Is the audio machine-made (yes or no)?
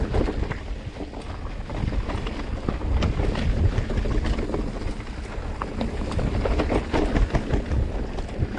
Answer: no